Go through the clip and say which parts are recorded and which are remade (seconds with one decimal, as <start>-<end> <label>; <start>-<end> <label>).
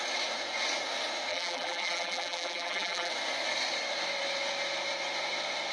0.0-1.3 recorded; 1.3-3.1 remade; 3.1-5.7 recorded